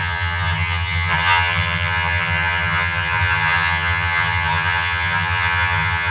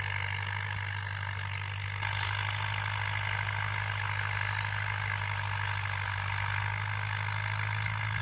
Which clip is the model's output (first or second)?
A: first